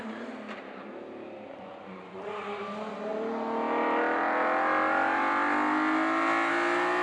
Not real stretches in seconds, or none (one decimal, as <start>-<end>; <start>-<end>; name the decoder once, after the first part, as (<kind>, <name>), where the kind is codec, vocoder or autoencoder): 1.5-2.6 (vocoder, Vocos)